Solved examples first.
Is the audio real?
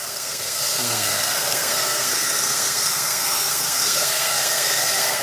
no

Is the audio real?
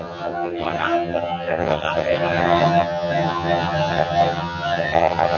no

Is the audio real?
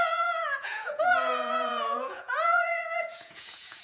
no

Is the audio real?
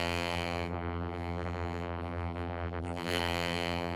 no